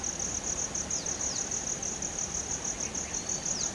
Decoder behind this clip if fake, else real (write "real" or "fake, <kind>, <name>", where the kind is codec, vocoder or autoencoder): real